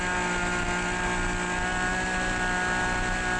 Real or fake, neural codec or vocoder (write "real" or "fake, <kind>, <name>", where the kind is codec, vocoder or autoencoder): real